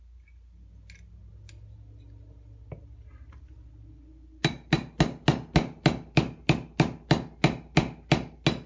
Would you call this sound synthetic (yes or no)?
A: no